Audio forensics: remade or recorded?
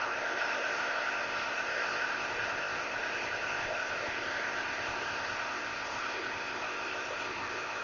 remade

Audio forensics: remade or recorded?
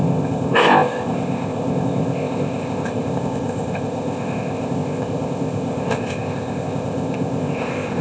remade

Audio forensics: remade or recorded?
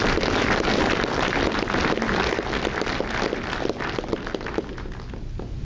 recorded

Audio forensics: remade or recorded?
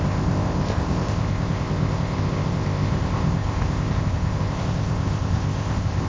remade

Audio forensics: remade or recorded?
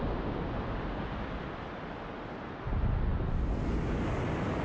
recorded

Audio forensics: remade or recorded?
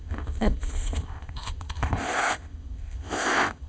remade